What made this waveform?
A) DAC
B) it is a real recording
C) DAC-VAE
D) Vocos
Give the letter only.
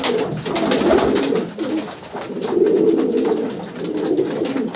B